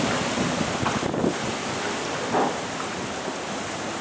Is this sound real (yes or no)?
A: yes